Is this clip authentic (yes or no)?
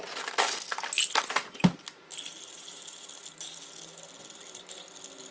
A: yes